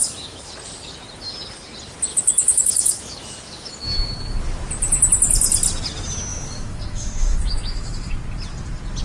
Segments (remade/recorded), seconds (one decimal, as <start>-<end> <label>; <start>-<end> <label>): 0.0-0.5 remade; 0.5-2.1 recorded; 2.1-4.1 remade; 4.1-6.3 recorded; 6.3-8.1 remade; 8.1-9.0 recorded

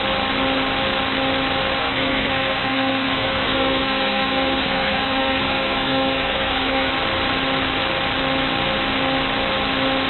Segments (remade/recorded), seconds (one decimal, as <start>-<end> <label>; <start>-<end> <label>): 0.0-1.8 recorded; 1.8-6.9 remade; 6.9-10.1 recorded

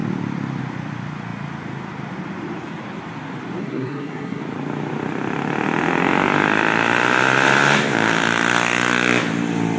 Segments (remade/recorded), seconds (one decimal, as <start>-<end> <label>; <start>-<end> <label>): 0.0-3.6 recorded; 3.6-4.4 remade; 4.4-9.8 recorded